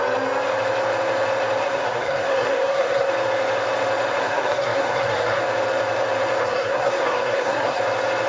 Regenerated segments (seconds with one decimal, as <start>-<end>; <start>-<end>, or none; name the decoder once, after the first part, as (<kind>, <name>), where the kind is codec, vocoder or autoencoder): 1.6-3.1 (codec, SNAC); 4.1-5.4; 6.4-7.8